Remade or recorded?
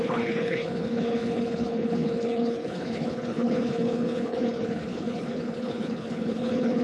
remade